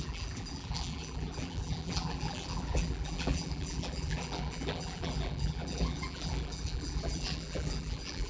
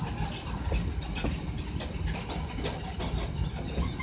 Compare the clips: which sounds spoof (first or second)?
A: first